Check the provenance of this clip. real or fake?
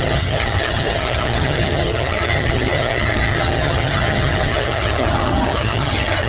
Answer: fake